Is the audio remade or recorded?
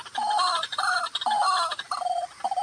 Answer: remade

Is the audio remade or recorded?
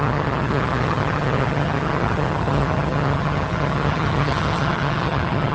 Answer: remade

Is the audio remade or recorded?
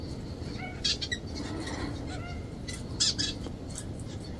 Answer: recorded